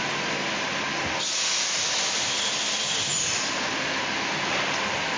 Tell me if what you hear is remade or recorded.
recorded